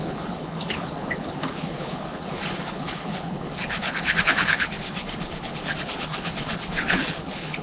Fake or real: fake